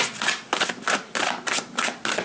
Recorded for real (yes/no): yes